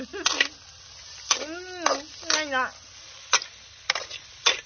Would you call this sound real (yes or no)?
yes